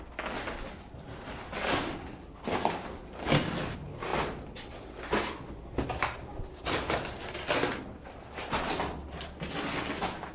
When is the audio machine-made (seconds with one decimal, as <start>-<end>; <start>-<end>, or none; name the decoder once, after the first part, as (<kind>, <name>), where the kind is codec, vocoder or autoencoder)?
none